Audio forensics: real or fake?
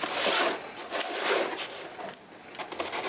real